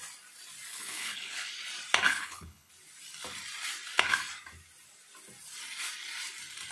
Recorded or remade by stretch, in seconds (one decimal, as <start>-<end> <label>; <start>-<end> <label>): 0.0-0.7 recorded; 0.7-1.5 remade; 1.5-2.1 recorded; 2.1-2.7 remade; 2.7-6.7 recorded